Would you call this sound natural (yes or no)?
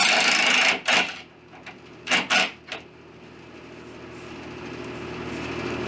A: yes